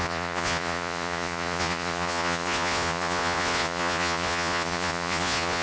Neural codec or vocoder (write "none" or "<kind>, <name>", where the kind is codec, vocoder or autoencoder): vocoder, Vocos